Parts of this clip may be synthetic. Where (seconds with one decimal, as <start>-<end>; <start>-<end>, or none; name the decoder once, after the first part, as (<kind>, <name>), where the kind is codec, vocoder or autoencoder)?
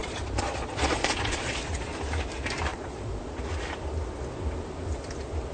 0.0-1.6 (vocoder, Vocos); 2.7-3.4